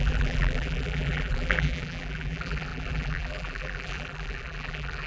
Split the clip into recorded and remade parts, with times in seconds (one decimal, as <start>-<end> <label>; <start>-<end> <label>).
0.0-5.1 remade